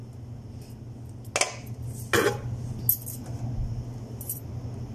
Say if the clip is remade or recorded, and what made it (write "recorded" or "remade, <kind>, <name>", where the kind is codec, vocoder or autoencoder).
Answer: recorded